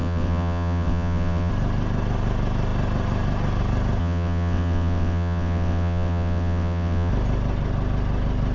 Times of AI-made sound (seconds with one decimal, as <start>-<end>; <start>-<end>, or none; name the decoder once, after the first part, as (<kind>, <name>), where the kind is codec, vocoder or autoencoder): 0.0-1.5 (vocoder, WaveNeXt); 4.0-7.1